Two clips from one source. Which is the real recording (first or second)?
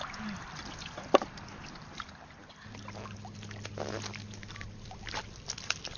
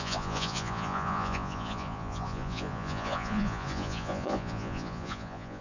first